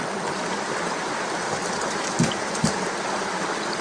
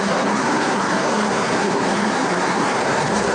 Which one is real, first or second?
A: first